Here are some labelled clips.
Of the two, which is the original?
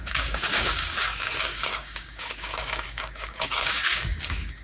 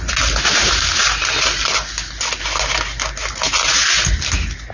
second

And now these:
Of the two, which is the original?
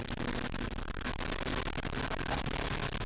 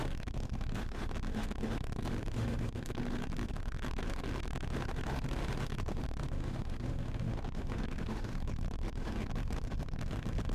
first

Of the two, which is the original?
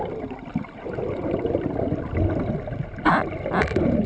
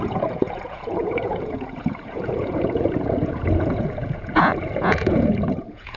first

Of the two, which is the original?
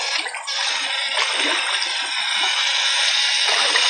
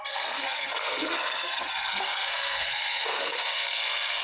first